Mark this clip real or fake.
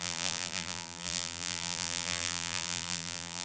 fake